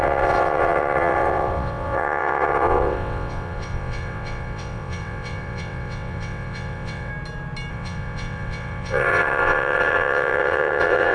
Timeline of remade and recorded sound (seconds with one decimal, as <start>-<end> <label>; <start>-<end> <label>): 0.0-7.1 remade; 7.1-7.7 recorded; 7.7-11.1 remade